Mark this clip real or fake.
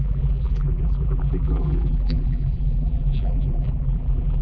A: fake